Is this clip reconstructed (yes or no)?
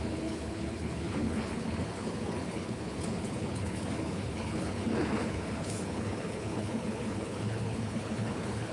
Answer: yes